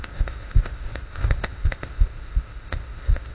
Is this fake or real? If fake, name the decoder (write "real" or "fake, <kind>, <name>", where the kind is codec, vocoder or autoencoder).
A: fake, codec, ZipCodec